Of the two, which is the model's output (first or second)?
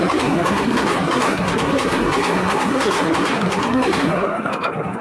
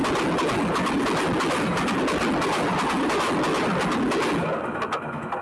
first